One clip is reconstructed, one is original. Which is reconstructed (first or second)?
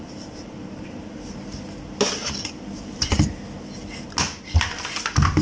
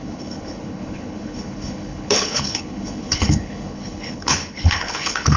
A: second